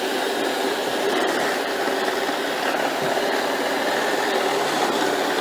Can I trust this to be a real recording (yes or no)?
no